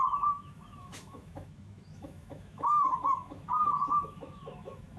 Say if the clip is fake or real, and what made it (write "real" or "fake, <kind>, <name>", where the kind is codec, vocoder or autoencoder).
fake, autoencoder, DAC-VAE